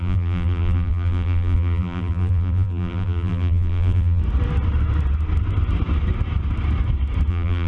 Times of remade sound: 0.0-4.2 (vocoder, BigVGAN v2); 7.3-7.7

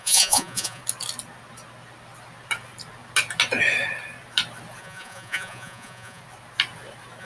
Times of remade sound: 0.0-0.8 (vocoder, Vocos); 4.8-6.2

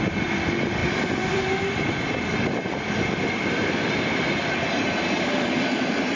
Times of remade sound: 0.8-4.2 (vocoder, BigVGAN v2)